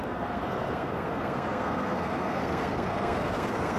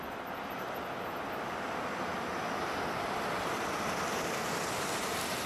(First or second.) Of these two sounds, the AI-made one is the first